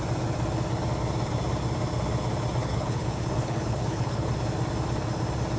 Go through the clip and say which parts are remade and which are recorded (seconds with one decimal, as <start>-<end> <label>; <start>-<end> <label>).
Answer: 0.0-2.6 recorded; 2.6-4.3 remade; 4.3-5.6 recorded